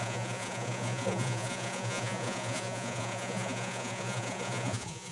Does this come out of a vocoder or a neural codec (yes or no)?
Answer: yes